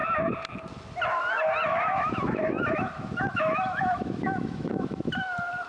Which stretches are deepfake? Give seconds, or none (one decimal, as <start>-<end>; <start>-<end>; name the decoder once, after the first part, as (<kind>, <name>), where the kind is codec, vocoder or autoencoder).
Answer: 1.7-5.1 (autoencoder, DAC-VAE)